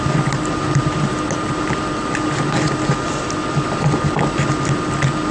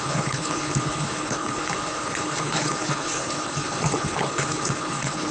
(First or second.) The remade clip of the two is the second